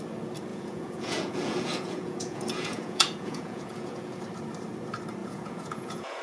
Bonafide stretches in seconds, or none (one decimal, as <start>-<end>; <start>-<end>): 0.0-0.5; 4.2-5.2